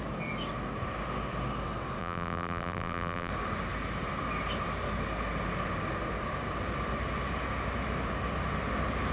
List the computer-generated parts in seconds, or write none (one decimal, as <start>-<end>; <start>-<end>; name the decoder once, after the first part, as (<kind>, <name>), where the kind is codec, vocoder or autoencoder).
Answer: 2.0-3.3 (vocoder, BigVGAN v2)